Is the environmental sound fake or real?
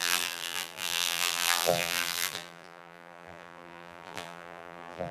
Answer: fake